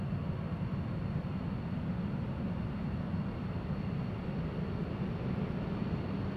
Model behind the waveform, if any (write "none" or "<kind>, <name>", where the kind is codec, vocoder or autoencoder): none